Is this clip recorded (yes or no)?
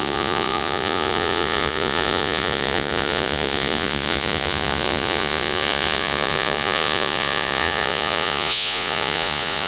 no